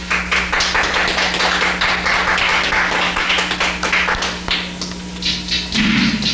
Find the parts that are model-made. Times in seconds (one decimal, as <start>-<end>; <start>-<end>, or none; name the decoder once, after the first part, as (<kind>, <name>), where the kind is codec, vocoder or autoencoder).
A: 2.5-3.3 (codec, DAC)